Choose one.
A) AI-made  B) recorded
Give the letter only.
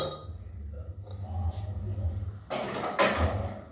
B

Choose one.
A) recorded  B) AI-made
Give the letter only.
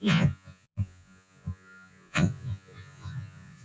B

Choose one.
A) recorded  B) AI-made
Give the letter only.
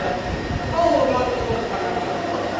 A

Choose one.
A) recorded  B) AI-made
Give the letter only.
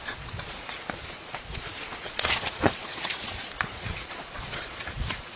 B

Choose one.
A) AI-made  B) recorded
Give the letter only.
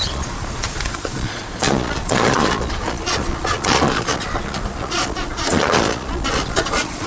A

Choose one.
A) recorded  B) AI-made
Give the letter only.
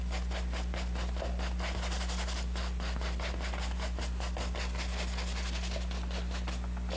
A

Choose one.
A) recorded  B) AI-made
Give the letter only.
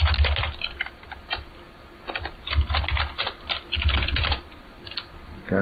A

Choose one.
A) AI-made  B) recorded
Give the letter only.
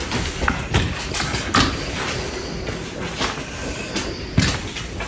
B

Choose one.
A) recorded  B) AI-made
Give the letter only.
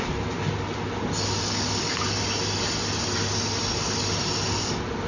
A